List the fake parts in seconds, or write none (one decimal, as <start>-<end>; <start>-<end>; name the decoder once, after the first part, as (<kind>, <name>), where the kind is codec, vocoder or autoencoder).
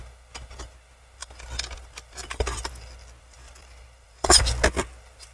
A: 1.2-4.4 (vocoder, BigVGAN v2)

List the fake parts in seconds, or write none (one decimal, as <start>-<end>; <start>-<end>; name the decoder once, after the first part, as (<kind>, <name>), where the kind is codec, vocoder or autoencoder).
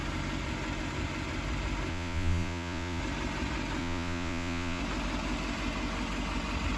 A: 1.9-3.0 (vocoder, Vocos); 3.8-4.8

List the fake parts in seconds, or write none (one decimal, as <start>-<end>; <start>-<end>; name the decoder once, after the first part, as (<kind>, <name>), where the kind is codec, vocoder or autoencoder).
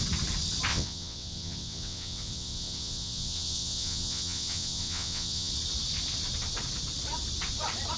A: 0.7-5.5 (vocoder, WaveNeXt)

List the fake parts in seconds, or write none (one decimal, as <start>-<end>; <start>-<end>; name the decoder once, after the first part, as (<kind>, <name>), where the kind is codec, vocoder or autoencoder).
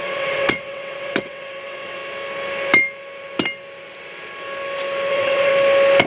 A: 0.0-2.0 (vocoder, WaveNeXt); 5.1-5.5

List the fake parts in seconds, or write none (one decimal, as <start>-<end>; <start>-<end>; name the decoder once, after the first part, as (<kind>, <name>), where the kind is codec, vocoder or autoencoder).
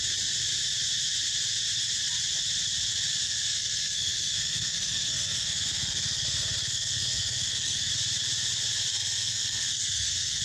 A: 3.2-7.9 (codec, SNAC); 8.9-10.4